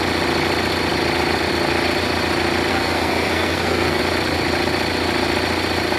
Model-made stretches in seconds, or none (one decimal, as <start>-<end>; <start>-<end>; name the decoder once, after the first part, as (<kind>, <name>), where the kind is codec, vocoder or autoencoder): 2.7-4.0 (codec, SNAC)